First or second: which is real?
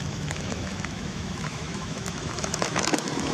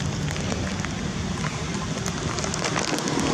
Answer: second